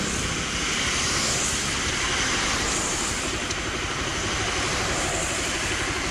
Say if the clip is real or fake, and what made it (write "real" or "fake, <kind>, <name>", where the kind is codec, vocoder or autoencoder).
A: real